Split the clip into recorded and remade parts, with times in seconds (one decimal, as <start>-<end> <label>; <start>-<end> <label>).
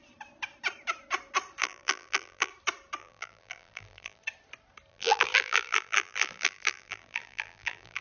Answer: 0.0-1.6 recorded; 1.6-2.5 remade; 2.5-3.0 recorded; 3.0-4.2 remade; 4.2-4.9 recorded; 4.9-8.0 remade